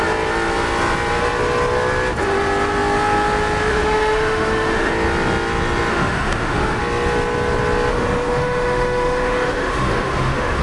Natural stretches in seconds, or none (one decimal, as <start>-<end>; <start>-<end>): 0.0-3.7; 4.9-5.9; 6.8-7.9